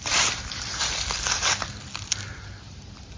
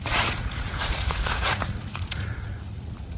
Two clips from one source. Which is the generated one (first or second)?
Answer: second